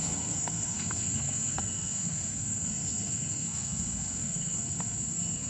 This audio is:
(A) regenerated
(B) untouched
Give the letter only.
A